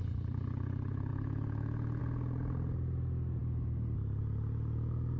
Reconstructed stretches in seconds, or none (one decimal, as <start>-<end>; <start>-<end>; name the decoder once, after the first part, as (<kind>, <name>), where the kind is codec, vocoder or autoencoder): 1.1-2.0 (autoencoder, DAC-VAE)